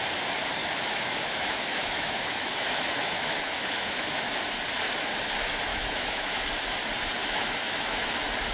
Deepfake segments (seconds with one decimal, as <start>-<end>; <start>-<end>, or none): 0.6-4.3; 5.7-6.4; 7.2-8.1